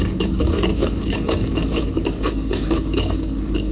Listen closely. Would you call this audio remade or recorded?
remade